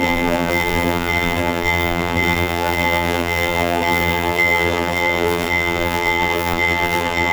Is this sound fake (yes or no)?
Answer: yes